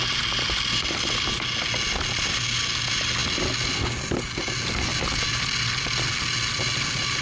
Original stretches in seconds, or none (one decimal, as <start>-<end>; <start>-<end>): 0.0-7.2